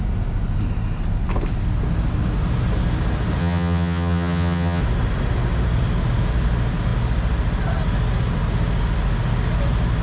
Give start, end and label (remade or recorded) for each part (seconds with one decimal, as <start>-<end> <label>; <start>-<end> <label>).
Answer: 0.0-3.4 recorded; 3.4-4.8 remade; 4.8-10.0 recorded